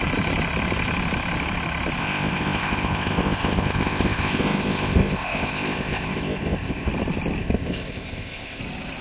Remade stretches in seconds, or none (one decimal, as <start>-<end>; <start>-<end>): 2.0-6.9; 7.4-8.6